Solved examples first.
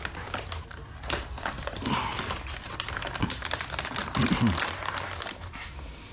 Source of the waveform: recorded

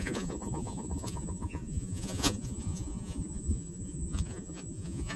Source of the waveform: remade